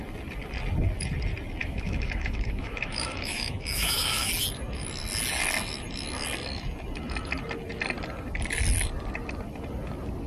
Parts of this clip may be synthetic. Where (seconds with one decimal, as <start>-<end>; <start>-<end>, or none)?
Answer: 1.6-4.3